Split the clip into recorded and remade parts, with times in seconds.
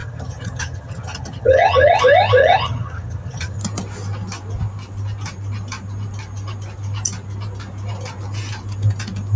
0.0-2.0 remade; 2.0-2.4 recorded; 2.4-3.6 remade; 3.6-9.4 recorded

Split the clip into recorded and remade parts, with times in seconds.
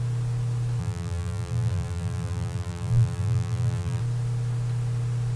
0.0-0.8 recorded; 0.8-4.0 remade; 4.0-5.4 recorded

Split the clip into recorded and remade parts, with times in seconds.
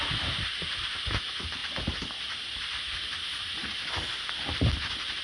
0.0-5.2 recorded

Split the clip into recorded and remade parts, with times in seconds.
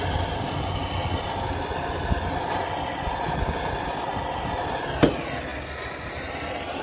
0.0-6.8 recorded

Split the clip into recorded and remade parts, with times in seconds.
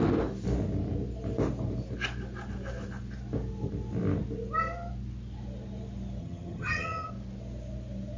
0.0-6.2 recorded; 6.2-7.1 remade; 7.1-8.2 recorded